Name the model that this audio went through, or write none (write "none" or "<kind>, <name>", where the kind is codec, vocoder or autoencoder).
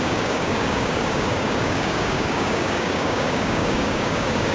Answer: codec, DAC